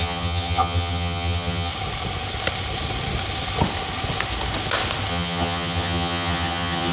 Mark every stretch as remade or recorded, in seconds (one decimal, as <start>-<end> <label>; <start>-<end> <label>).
0.0-1.7 remade; 1.7-5.1 recorded; 5.1-6.9 remade